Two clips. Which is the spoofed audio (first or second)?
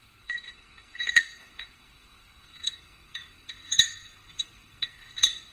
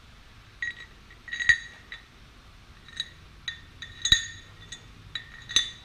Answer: first